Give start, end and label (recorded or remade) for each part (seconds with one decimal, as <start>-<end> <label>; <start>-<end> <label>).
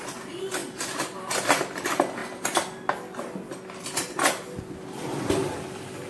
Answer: 0.0-0.6 remade; 0.6-1.3 recorded; 1.3-2.2 remade; 2.2-6.1 recorded